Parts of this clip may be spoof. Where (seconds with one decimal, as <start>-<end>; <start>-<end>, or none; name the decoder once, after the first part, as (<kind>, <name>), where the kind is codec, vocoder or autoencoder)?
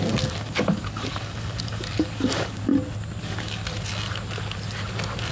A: 0.0-2.7 (codec, DAC); 3.2-3.6